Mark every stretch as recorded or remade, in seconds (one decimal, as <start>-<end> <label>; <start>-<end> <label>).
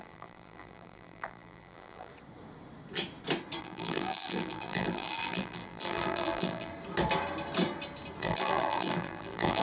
0.0-2.1 remade; 2.1-3.6 recorded; 3.6-6.7 remade; 6.7-8.2 recorded; 8.2-9.6 remade